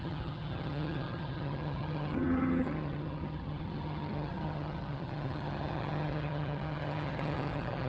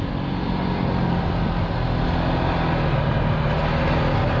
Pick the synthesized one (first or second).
first